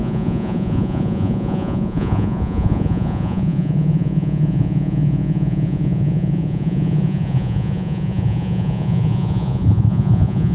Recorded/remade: remade